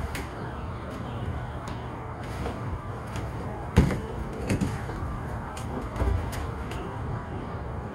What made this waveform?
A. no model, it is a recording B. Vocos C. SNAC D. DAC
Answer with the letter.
D